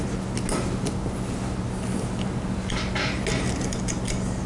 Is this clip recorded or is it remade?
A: recorded